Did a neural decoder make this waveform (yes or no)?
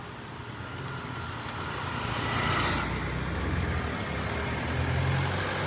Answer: no